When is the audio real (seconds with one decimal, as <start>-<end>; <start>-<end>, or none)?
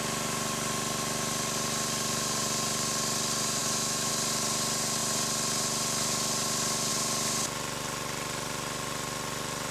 0.0-3.6; 4.1-9.7